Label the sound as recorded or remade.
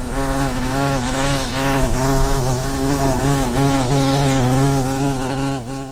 remade